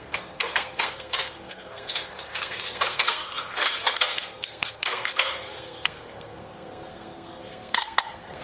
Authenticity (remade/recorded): remade